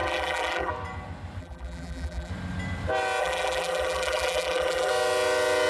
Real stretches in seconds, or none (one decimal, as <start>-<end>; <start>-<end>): 0.7-1.4; 2.3-3.2; 4.9-5.7